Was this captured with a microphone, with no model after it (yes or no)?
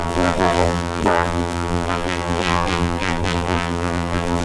no